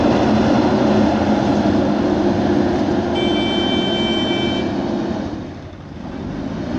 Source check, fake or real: real